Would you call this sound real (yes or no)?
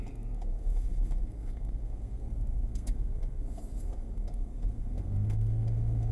no